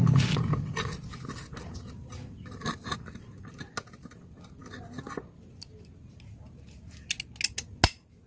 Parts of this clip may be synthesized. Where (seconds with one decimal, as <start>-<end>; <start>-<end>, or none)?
none